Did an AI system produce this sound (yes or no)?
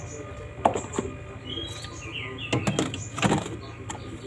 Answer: no